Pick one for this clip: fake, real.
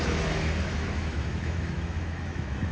fake